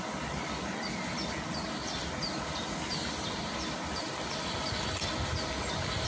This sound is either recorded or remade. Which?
recorded